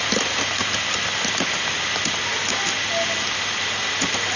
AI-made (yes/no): no